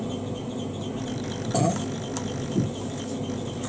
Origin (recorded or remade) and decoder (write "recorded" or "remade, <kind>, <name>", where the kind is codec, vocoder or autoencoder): recorded